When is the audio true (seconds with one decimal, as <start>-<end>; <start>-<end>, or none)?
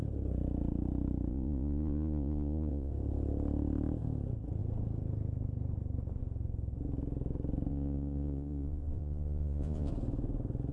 0.0-1.3; 2.9-7.7; 9.9-10.7